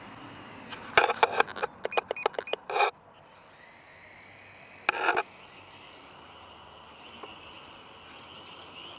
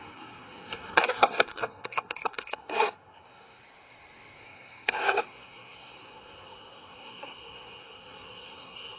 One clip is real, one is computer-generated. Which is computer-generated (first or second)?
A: second